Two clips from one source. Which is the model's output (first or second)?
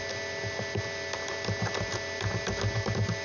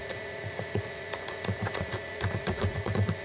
second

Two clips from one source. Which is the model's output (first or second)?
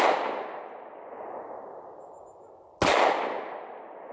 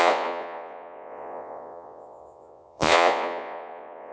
second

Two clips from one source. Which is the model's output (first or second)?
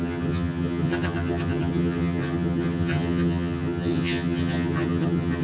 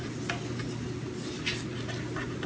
first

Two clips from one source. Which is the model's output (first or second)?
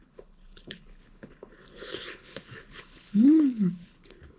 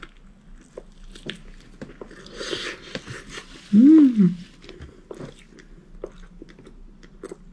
first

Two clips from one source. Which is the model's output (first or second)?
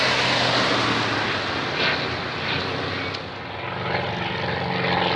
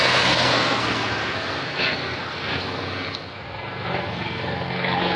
second